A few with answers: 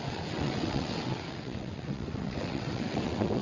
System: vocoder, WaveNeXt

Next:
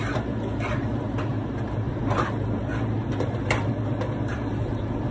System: vocoder, BigVGAN v2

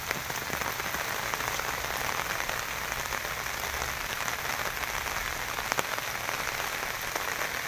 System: none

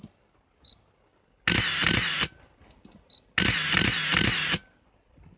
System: none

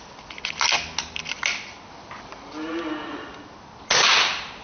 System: none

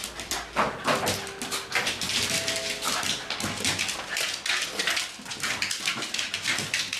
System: none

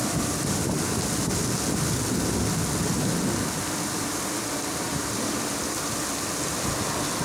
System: none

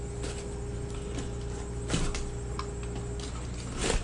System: none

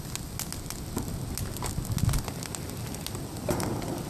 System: none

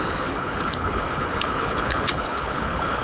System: codec, HILCodec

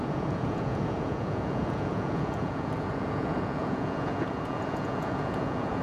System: vocoder, Vocos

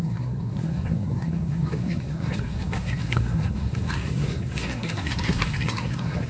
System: codec, SNAC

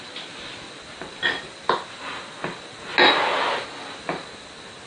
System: none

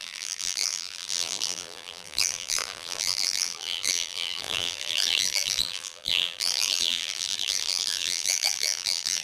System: vocoder, BigVGAN v2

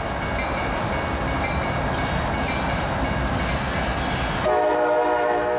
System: none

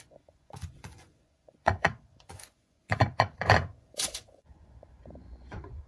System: vocoder, Vocos